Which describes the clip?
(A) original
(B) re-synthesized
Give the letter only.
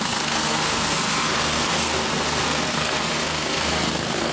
B